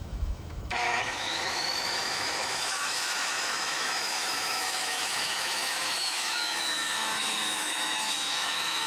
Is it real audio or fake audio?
fake